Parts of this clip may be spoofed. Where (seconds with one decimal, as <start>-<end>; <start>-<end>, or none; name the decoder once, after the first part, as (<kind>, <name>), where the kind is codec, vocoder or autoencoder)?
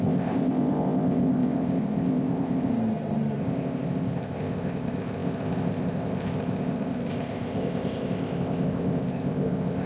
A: 0.0-2.7 (codec, ZipCodec); 3.4-9.9